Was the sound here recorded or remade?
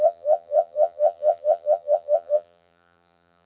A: remade